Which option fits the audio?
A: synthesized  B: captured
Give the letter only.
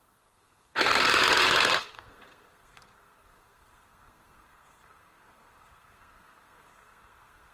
A